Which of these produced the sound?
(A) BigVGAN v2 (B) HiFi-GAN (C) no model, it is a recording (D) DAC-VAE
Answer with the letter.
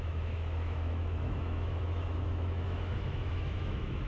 D